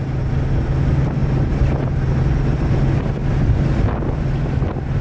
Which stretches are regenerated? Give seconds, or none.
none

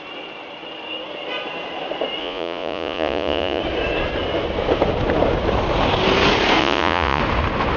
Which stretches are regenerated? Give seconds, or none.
2.2-3.6; 6.6-7.2